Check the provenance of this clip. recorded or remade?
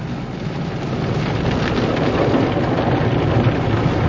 recorded